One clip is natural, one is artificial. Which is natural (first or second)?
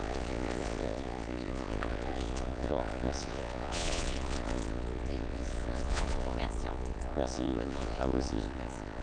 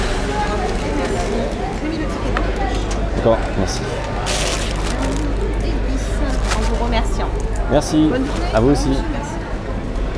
second